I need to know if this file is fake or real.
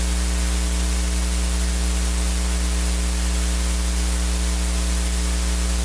real